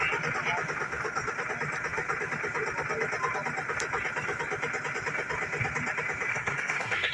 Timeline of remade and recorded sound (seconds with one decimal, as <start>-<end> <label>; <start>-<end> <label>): 0.0-6.3 recorded; 6.3-7.1 remade